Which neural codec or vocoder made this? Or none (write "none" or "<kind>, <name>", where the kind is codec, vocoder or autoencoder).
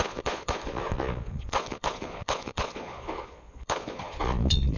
vocoder, Vocos